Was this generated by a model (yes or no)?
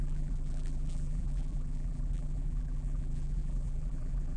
yes